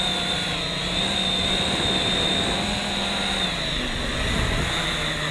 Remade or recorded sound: recorded